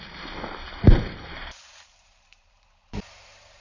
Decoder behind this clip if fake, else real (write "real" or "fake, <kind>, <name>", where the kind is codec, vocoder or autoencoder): fake, vocoder, BigVGAN v2